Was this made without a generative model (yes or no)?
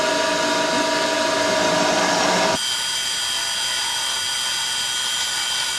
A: yes